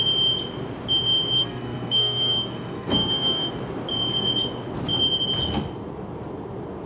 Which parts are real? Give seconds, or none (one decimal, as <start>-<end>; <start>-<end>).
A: 0.0-1.4; 3.5-6.9